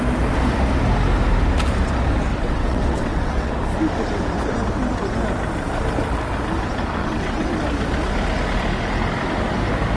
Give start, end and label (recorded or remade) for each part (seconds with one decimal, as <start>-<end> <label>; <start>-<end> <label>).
0.0-2.3 recorded; 2.3-3.5 remade; 3.5-7.0 recorded; 7.0-7.5 remade; 7.5-10.0 recorded